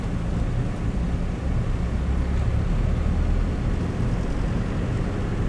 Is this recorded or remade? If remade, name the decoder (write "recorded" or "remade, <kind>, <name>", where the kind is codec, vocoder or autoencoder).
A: recorded